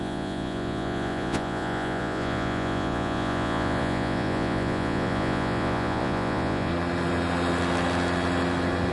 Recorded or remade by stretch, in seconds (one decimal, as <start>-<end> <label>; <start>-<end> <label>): 0.0-6.7 remade; 6.7-8.9 recorded